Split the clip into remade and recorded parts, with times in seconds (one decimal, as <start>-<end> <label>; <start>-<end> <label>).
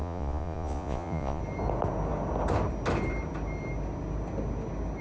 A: 0.0-1.4 remade; 1.4-5.0 recorded